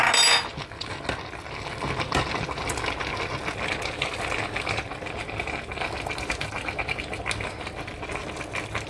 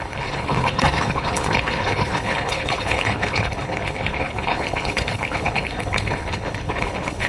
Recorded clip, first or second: first